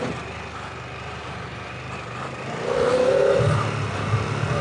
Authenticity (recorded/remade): recorded